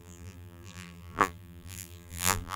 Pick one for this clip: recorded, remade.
remade